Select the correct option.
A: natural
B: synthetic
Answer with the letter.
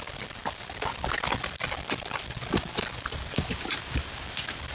A